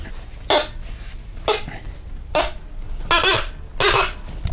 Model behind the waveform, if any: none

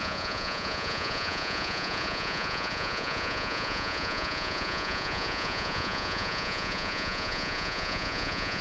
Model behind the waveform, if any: vocoder, Vocos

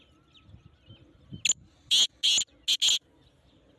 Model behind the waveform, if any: none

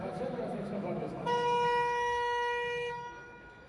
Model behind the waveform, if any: autoencoder, DAC-VAE